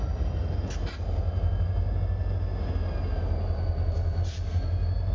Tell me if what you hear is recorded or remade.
recorded